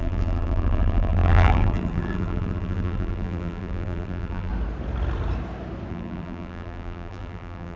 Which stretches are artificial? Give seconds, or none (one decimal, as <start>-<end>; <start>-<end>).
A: 0.0-4.5; 5.9-7.8